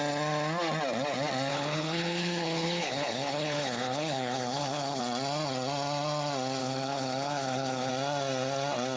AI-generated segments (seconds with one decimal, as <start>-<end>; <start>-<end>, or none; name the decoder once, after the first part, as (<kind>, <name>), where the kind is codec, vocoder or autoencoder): 1.5-5.0 (codec, HILCodec); 6.6-7.9